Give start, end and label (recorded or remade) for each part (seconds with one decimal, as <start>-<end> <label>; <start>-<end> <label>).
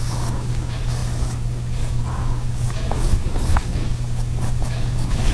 0.0-5.3 remade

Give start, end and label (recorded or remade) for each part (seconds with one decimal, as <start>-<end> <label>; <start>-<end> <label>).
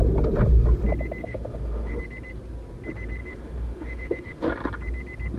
0.0-1.2 recorded; 1.2-2.0 remade; 2.0-3.2 recorded; 3.2-4.5 remade; 4.5-5.4 recorded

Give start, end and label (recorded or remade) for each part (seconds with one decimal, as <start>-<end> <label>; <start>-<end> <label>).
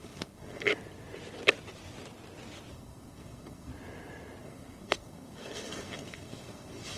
0.0-0.7 remade; 0.7-2.7 recorded; 2.7-3.7 remade; 3.7-4.4 recorded; 4.4-7.0 remade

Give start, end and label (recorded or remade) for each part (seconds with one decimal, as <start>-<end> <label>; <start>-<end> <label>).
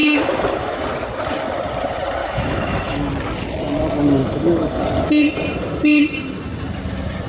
0.0-0.8 remade; 0.8-2.2 recorded; 2.2-3.1 remade; 3.1-4.2 recorded; 4.2-4.8 remade; 4.8-7.3 recorded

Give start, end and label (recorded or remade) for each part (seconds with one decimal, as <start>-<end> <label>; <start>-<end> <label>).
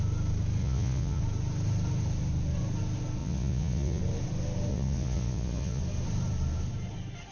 0.0-0.6 recorded; 0.6-1.2 remade; 1.2-3.2 recorded; 3.2-4.0 remade; 4.0-4.7 recorded; 4.7-5.8 remade; 5.8-7.3 recorded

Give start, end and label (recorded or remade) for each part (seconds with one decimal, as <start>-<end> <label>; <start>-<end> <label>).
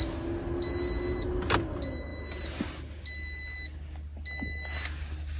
0.0-5.4 recorded